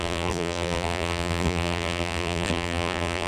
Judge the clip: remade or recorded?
remade